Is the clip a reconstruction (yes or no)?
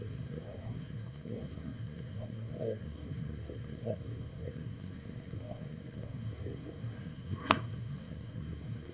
yes